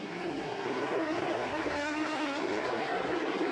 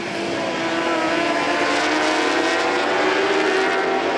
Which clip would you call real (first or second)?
second